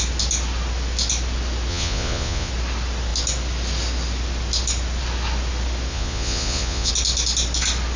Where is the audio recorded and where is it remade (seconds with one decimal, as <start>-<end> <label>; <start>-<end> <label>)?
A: 0.0-1.7 recorded; 1.7-2.5 remade; 2.5-5.9 recorded; 5.9-6.9 remade; 6.9-8.0 recorded